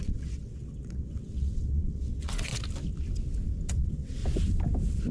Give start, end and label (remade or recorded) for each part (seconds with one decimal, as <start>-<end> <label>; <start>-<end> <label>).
0.0-2.5 remade; 2.5-3.7 recorded; 3.7-4.2 remade; 4.2-5.1 recorded

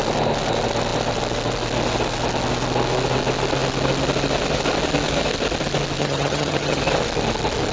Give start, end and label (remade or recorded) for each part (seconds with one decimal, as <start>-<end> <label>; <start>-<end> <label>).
0.0-6.0 recorded; 6.0-6.8 remade; 6.8-7.7 recorded

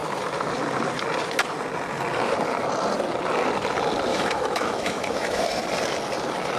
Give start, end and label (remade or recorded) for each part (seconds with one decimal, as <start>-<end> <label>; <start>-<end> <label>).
0.0-4.1 recorded; 4.1-5.6 remade; 5.6-6.6 recorded

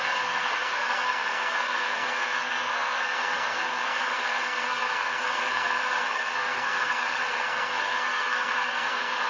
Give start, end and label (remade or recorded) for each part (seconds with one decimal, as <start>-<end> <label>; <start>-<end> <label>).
0.0-9.3 remade

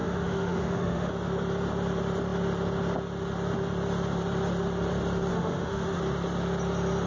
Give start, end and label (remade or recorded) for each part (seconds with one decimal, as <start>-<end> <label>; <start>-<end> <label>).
0.0-1.1 remade; 1.1-5.3 recorded; 5.3-6.0 remade; 6.0-7.1 recorded

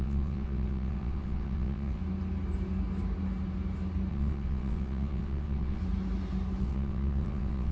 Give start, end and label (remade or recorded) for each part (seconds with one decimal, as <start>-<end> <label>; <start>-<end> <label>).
0.0-2.0 remade; 2.0-4.1 recorded; 4.1-5.8 remade; 5.8-6.6 recorded; 6.6-7.7 remade

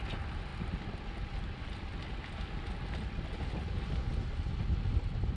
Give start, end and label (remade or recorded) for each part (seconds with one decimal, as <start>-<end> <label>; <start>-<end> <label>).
0.0-5.4 recorded